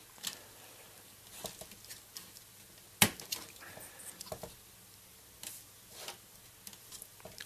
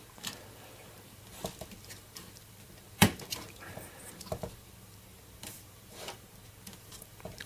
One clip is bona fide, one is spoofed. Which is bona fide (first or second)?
first